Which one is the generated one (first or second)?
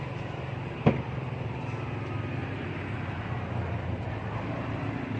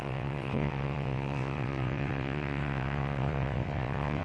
second